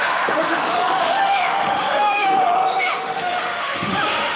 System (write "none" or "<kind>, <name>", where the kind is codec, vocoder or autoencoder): autoencoder, DAC-VAE